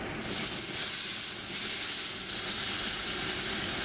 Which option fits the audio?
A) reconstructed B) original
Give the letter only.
B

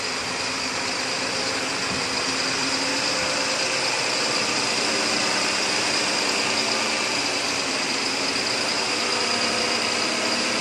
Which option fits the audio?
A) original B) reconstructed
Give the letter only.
B